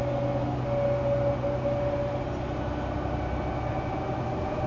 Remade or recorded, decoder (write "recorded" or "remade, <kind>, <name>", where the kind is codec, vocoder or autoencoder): recorded